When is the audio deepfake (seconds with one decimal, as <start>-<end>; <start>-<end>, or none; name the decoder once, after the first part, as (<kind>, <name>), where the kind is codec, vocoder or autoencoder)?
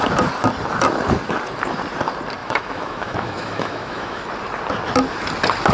2.4-4.2 (autoencoder, DAC-VAE)